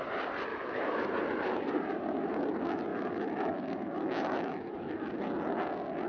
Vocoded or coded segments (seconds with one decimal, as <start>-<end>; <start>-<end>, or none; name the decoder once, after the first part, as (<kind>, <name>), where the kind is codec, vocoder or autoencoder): 0.5-1.0 (autoencoder, DAC-VAE); 2.9-5.1